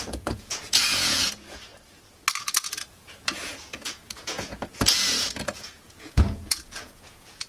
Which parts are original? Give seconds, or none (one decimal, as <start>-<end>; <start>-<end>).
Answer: 1.7-2.4